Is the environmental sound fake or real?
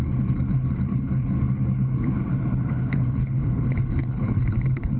fake